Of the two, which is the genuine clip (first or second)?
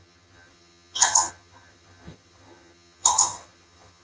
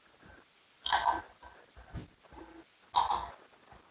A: second